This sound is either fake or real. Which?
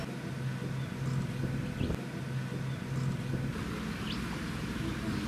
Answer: real